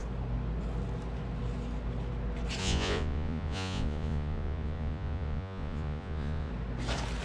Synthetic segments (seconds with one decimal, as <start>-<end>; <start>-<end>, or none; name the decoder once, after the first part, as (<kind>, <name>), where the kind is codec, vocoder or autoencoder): 2.6-6.5 (vocoder, Vocos)